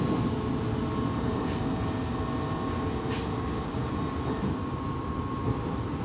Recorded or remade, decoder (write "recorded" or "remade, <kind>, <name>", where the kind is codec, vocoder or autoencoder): recorded